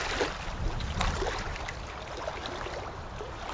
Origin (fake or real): fake